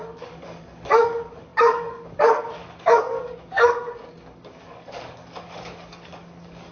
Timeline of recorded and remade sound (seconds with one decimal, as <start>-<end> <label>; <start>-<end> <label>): 0.0-6.7 remade